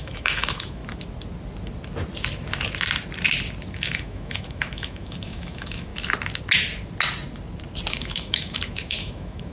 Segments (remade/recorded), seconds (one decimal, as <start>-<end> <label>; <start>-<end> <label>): 0.0-0.8 remade; 0.8-3.7 recorded; 3.7-5.9 remade; 5.9-7.9 recorded; 7.9-9.5 remade